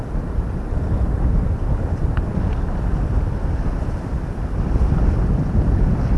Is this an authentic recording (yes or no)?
yes